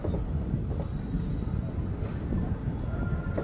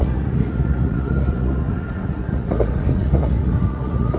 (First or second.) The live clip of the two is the first